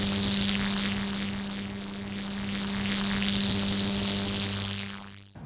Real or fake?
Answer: real